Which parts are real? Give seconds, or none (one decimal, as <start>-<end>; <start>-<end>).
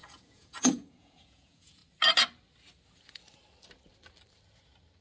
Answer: 1.8-5.0